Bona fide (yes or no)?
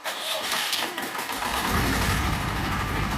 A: no